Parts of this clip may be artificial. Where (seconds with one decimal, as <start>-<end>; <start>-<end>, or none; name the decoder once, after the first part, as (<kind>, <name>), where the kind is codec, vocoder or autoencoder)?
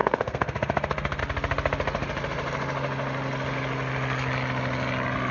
0.0-1.2 (codec, SNAC)